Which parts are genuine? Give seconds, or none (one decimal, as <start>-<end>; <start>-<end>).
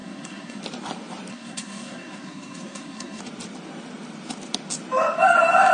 0.6-1.3; 3.2-5.7